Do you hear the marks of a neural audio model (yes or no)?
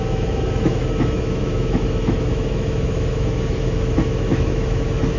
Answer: yes